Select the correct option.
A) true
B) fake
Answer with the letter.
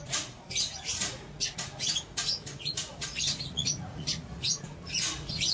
B